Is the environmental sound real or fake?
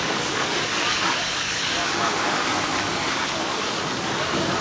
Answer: fake